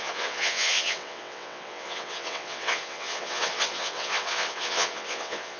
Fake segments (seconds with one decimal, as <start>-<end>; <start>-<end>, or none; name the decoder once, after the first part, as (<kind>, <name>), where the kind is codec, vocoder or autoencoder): 0.0-5.6 (vocoder, WaveNeXt)